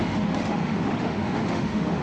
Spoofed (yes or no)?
yes